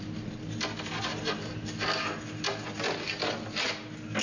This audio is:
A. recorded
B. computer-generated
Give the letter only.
A